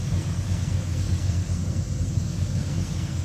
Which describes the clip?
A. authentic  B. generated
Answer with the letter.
B